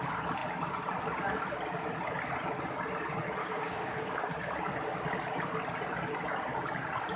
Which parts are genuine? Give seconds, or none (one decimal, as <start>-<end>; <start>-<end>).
0.0-3.4; 4.2-7.2